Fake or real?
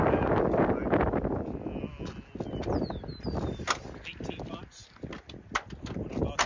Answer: real